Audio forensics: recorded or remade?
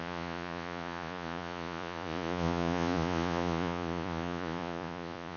remade